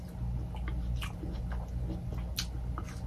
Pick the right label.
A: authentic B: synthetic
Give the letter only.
A